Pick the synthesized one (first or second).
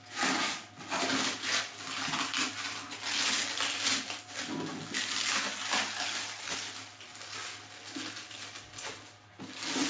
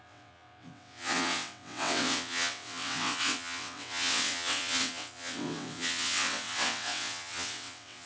second